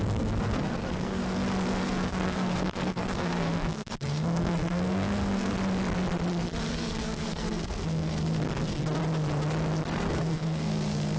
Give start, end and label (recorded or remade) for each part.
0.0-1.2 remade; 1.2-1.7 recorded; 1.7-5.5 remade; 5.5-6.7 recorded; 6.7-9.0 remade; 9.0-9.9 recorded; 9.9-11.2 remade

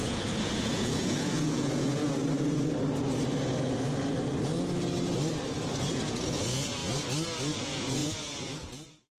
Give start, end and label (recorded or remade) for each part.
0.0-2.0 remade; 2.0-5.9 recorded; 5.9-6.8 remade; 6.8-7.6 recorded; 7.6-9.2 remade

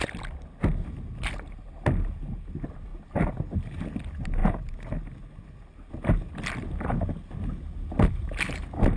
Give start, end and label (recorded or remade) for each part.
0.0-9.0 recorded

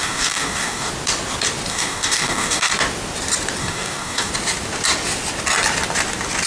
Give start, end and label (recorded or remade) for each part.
0.0-0.9 remade; 0.9-1.7 recorded; 1.7-2.7 remade; 2.7-3.6 recorded; 3.6-4.3 remade; 4.3-6.5 recorded